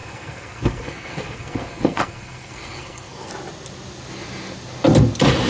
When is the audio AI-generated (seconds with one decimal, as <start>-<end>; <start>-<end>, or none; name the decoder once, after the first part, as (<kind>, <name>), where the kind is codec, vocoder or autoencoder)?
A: 0.0-3.3 (codec, SNAC)